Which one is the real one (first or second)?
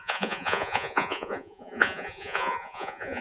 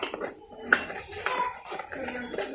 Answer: second